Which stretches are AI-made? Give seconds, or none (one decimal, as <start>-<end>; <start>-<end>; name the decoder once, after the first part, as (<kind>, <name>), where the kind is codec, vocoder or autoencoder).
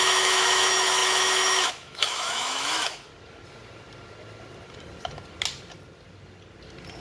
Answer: 0.0-3.1 (autoencoder, DAC-VAE)